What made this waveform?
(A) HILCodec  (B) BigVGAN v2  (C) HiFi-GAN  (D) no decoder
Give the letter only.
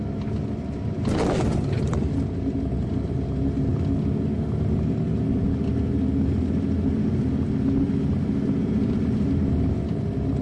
D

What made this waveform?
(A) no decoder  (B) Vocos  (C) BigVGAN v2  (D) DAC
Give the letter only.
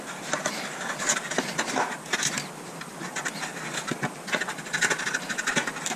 A